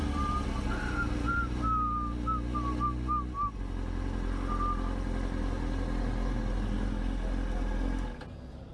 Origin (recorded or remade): recorded